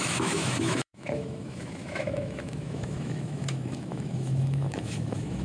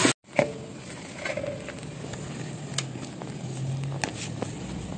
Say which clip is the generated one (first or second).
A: first